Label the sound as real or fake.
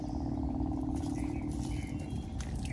real